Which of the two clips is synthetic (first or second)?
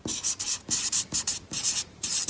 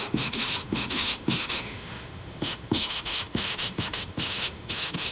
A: second